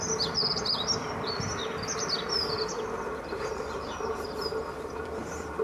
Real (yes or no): yes